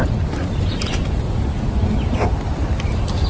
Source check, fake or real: real